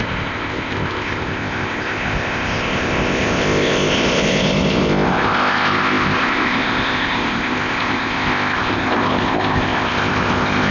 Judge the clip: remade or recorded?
remade